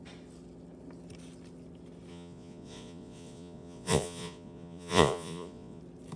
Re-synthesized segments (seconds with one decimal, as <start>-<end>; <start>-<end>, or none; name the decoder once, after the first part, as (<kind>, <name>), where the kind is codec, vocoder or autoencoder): 2.1-5.8 (vocoder, Vocos)